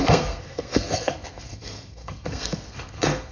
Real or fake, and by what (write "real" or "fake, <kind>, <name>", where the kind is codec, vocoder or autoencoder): fake, codec, SNAC